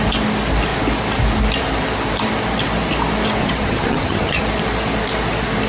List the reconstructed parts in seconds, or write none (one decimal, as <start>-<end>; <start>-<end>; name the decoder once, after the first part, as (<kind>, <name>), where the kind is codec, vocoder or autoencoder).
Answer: 3.4-4.4 (vocoder, HiFi-GAN)